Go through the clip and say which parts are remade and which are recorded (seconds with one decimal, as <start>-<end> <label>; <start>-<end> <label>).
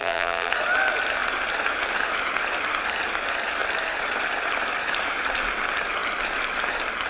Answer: 0.0-0.5 remade; 0.5-7.1 recorded